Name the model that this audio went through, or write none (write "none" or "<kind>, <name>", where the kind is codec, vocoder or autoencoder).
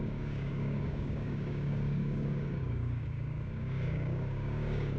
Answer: codec, DAC